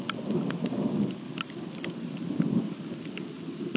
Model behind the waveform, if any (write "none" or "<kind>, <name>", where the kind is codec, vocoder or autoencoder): none